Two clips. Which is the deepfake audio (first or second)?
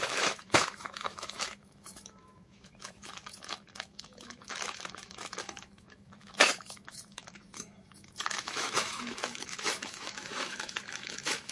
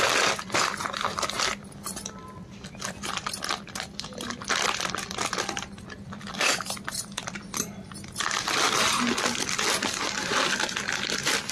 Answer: first